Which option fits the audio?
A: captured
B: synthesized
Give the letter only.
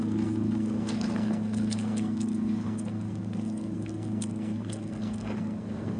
B